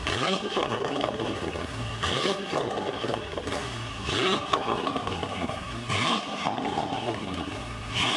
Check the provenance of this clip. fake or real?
fake